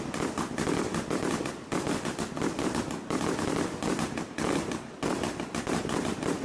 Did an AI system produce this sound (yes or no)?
no